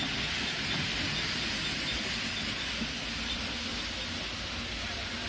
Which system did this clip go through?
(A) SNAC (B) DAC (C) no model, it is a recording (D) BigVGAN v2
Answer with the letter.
C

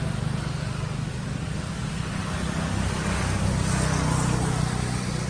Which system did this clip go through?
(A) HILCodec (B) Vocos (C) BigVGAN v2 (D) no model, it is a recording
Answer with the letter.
D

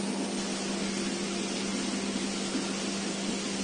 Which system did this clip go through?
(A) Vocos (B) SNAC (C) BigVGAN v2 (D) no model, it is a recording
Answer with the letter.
D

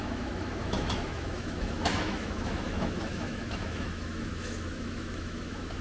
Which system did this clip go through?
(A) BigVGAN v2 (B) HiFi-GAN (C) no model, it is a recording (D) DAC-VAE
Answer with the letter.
D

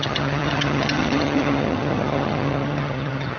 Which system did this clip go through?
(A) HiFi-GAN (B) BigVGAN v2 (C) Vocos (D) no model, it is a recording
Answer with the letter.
A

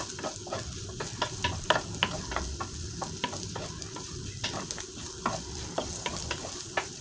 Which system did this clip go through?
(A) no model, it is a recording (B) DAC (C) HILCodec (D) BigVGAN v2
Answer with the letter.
A